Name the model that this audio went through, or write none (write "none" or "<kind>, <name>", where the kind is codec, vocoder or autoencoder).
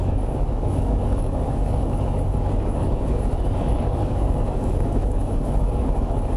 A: codec, DAC